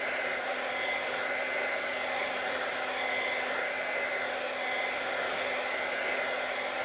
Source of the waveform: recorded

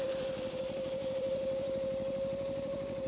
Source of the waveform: remade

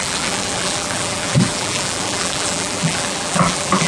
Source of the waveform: remade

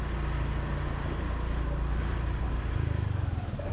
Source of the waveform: recorded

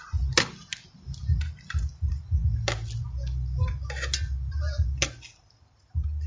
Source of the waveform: recorded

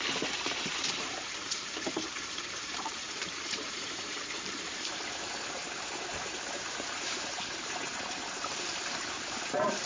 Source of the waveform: remade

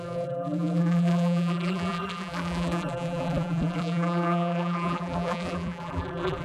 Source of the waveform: remade